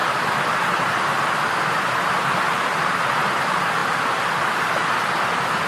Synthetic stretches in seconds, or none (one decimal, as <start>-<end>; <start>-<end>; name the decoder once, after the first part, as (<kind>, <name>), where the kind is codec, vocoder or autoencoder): none